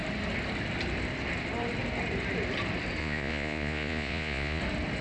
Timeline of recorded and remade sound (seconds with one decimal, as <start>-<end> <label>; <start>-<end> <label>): 0.0-3.0 recorded; 3.0-4.6 remade; 4.6-5.0 recorded